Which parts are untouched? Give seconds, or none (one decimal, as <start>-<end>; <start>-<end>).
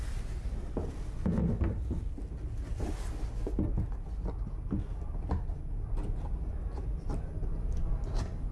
0.0-8.5